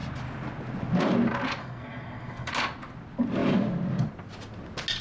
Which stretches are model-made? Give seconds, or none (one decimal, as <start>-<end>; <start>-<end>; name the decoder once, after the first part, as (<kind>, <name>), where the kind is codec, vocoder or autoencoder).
1.6-2.5 (codec, SNAC)